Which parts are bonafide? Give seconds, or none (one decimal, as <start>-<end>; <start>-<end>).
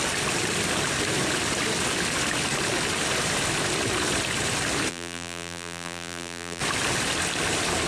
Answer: 0.0-4.9; 6.6-7.9